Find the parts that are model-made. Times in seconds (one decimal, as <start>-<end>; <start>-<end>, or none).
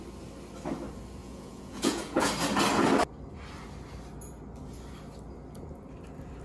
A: 1.2-2.3